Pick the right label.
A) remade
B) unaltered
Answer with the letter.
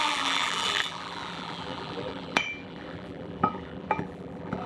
A